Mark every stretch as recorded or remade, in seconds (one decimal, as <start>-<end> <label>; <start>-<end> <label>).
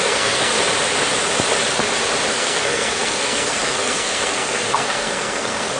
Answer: 0.0-0.5 remade; 0.5-2.3 recorded; 2.3-5.8 remade